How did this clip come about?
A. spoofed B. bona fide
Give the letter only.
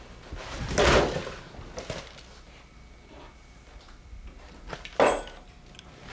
B